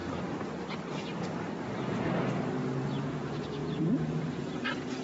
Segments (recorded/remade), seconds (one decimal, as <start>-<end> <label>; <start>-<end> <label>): 0.0-3.0 recorded; 3.0-5.0 remade